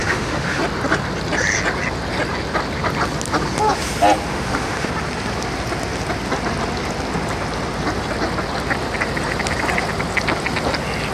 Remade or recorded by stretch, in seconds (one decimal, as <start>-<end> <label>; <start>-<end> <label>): 0.0-0.6 remade; 0.6-4.3 recorded; 4.3-4.9 remade; 4.9-11.1 recorded